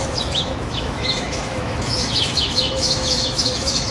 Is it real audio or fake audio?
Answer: fake